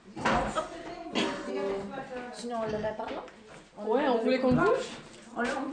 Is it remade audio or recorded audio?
recorded